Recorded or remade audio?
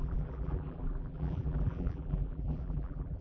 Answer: remade